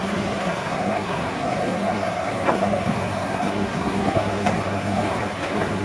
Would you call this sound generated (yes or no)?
yes